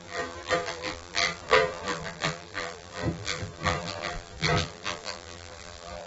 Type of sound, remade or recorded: remade